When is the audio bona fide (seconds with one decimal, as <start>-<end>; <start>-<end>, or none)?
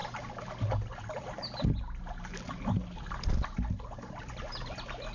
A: 0.0-5.1